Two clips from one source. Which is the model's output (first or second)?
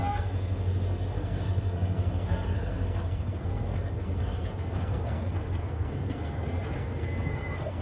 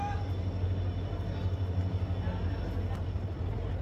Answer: first